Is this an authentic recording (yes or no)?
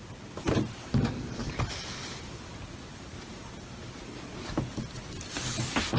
yes